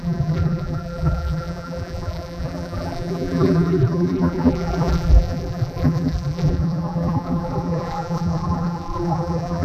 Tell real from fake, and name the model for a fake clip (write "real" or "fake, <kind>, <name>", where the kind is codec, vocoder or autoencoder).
fake, vocoder, BigVGAN v2